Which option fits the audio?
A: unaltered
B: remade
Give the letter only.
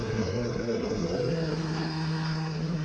B